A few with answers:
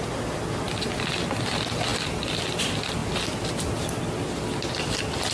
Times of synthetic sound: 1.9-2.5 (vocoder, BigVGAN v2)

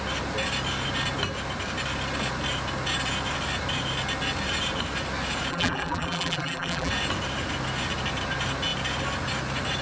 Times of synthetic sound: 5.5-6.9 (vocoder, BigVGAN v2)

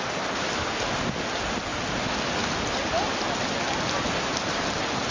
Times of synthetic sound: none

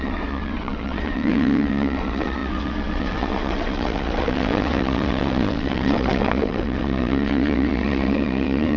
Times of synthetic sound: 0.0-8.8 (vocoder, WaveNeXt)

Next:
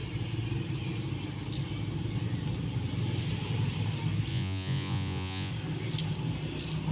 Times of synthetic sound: 4.3-5.5 (vocoder, Vocos)

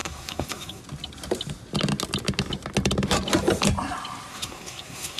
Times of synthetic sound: 0.0-0.8 (codec, SNAC); 4.3-5.2

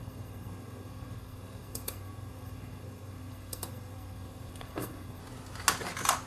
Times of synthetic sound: 0.0-5.2 (codec, SNAC)

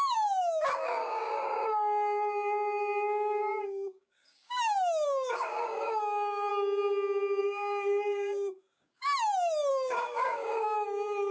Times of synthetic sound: 0.0-6.5 (codec, DAC); 7.4-9.1; 9.7-11.3